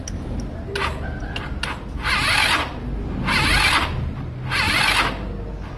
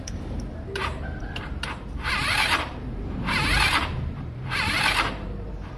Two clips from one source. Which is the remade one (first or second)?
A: second